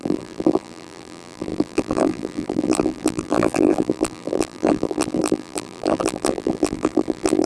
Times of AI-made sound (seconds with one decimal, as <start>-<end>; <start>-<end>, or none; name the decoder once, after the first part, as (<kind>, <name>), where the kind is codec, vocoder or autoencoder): 0.0-7.5 (vocoder, BigVGAN v2)